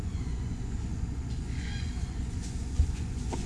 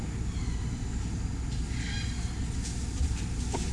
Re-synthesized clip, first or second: first